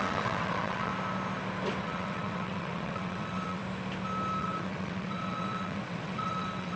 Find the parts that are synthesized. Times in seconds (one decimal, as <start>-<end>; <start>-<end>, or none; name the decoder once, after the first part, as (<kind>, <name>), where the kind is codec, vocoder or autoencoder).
0.0-0.9 (vocoder, WaveNeXt); 1.8-3.6; 4.4-6.8